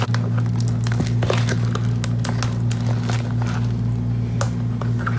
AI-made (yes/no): no